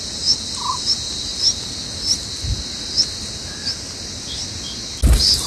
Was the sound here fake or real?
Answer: real